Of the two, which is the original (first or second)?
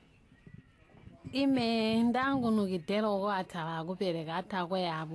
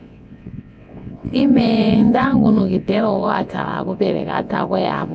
first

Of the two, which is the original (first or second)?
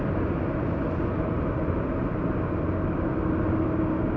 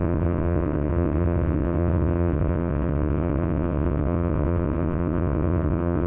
first